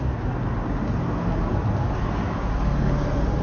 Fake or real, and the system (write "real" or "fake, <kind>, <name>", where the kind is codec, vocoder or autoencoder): real